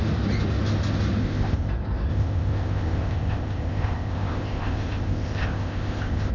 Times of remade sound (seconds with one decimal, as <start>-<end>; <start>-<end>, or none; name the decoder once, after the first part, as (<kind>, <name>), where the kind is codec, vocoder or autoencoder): 1.2-1.7 (codec, ZipCodec); 2.1-6.3